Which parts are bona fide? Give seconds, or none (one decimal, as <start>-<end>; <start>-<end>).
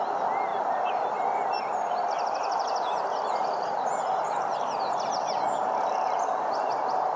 0.0-7.2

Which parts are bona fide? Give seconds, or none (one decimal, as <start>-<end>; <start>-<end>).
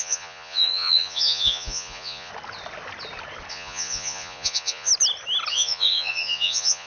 2.3-3.5; 4.9-5.5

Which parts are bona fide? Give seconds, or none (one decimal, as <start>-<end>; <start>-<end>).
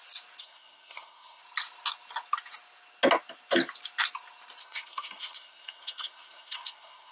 0.0-0.4; 1.4-4.6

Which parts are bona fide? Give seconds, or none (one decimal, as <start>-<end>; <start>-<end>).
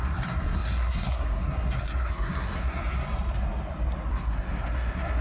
2.8-4.1